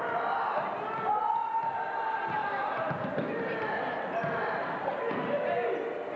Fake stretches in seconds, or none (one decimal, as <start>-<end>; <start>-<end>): none